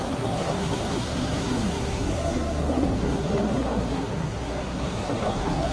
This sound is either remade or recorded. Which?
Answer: remade